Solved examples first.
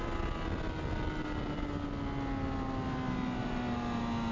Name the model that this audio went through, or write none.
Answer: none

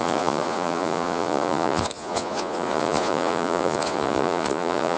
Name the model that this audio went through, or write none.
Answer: vocoder, Vocos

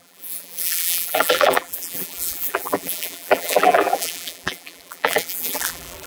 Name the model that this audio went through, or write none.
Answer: vocoder, BigVGAN v2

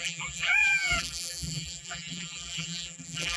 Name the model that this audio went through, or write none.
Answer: vocoder, BigVGAN v2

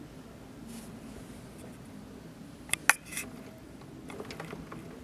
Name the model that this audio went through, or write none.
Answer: none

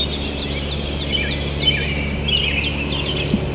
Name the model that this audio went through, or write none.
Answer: none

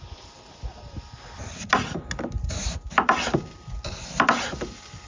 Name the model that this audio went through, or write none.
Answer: none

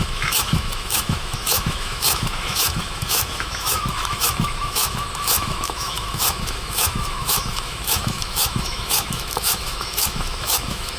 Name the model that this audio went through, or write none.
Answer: autoencoder, DAC-VAE